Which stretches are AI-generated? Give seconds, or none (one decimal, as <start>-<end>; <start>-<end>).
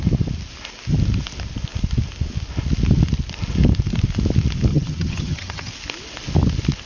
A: 4.7-5.7